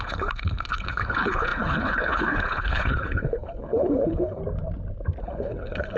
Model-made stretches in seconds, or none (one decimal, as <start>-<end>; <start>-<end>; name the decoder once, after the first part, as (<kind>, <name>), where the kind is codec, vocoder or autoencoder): 0.0-4.4 (codec, HILCodec); 5.2-6.0